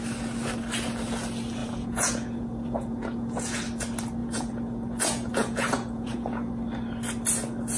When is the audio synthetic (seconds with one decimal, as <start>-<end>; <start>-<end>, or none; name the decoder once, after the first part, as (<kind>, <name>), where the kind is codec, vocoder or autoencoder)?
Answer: 1.6-3.6 (vocoder, Vocos); 4.2-6.5

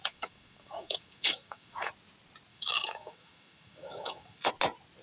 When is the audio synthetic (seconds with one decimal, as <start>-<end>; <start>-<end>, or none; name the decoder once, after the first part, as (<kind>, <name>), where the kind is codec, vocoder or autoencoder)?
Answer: 0.0-1.9 (autoencoder, DAC-VAE); 2.5-4.5

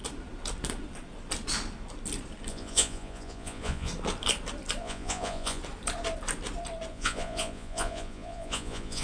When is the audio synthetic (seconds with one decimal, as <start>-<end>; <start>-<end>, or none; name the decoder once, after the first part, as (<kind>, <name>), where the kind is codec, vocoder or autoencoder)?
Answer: 2.5-3.9 (vocoder, Vocos); 4.8-5.6; 6.9-9.0

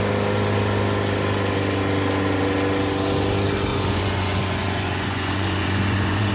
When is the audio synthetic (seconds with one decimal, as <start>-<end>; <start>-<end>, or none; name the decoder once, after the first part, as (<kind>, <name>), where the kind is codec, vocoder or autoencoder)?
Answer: 3.7-6.3 (vocoder, Vocos)

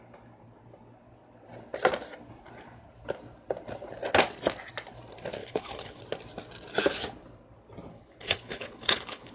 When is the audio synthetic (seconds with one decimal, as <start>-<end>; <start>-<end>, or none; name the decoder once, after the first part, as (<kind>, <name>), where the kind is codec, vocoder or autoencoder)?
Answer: 5.4-6.0 (codec, HILCodec); 7.9-9.3

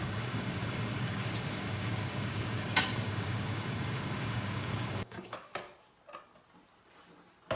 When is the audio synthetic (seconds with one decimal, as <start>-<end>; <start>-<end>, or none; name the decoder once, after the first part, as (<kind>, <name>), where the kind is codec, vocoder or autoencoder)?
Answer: 0.0-5.5 (codec, DAC)